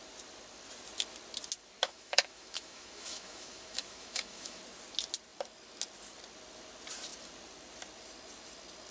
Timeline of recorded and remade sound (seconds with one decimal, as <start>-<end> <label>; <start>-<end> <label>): 0.0-1.8 recorded; 1.8-4.6 remade; 4.6-8.9 recorded